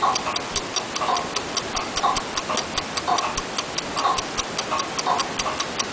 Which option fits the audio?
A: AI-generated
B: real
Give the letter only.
B